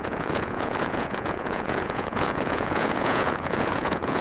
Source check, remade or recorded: remade